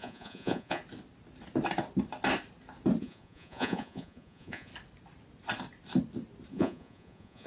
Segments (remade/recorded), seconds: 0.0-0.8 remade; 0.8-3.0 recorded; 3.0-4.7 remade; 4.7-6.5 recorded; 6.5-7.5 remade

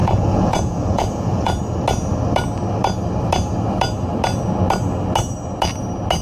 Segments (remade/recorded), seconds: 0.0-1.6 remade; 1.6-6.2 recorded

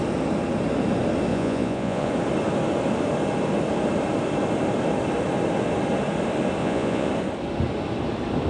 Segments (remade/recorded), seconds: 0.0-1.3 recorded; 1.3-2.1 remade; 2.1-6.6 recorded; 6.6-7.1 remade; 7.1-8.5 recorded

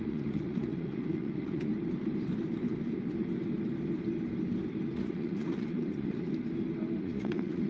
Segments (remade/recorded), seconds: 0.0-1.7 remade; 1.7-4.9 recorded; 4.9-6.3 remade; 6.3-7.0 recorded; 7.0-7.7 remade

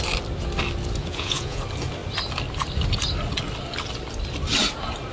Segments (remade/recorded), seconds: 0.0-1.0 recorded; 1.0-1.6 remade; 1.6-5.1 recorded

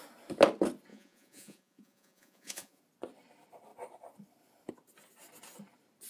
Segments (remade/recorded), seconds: 0.0-0.9 recorded; 0.9-2.8 remade; 2.8-6.1 recorded